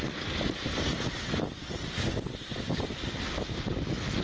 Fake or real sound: real